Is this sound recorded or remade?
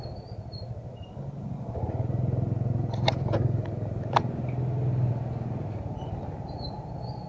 recorded